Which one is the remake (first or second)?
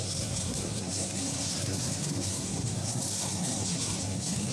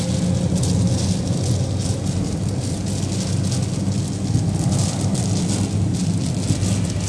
first